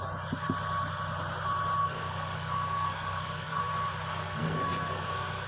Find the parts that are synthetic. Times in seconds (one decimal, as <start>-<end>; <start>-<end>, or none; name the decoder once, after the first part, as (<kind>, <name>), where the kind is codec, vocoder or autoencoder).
1.8-3.6 (codec, SNAC); 4.1-5.5